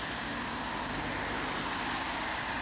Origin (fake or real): real